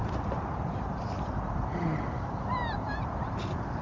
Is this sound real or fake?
fake